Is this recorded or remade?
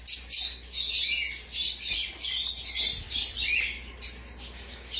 recorded